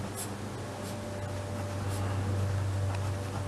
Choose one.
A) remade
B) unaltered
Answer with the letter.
B